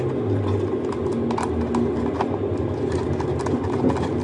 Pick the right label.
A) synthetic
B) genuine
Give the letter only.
B